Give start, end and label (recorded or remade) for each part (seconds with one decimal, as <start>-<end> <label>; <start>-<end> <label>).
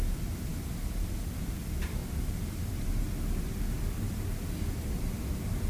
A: 0.0-5.7 remade